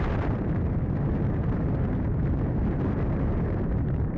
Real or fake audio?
fake